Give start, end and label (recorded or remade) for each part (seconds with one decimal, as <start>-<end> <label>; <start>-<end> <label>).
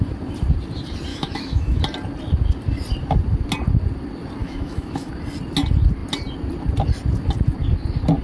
0.0-1.1 recorded; 1.1-1.8 remade; 1.8-4.4 recorded; 4.4-5.1 remade; 5.1-8.2 recorded